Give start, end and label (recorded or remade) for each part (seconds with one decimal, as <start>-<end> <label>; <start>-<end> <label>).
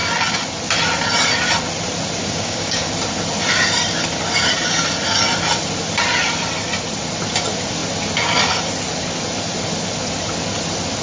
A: 0.0-2.2 recorded; 2.2-2.8 remade; 2.8-11.0 recorded